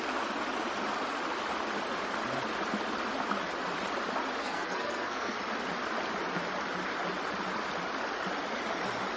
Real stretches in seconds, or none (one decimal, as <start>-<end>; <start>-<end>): 0.0-4.4; 5.4-9.2